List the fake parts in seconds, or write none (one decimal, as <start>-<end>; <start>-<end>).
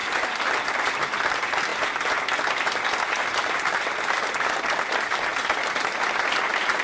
none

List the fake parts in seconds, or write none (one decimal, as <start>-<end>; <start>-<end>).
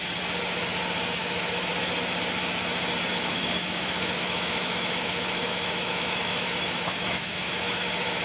1.2-1.7; 3.1-8.2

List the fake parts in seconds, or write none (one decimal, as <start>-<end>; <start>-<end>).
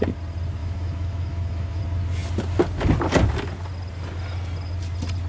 0.6-1.8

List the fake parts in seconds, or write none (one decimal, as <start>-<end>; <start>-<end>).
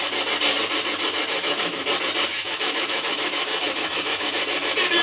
1.3-1.9; 2.3-4.3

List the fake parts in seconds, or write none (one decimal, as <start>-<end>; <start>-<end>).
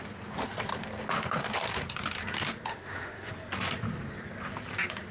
2.7-3.3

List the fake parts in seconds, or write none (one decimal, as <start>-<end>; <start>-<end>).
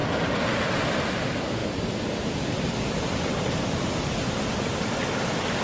none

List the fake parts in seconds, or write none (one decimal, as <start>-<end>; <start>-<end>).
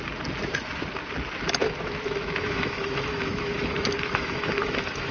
1.6-5.1